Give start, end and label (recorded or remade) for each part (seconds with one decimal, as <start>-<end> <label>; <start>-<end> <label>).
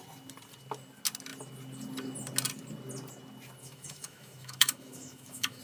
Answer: 0.0-3.6 recorded; 3.6-5.6 remade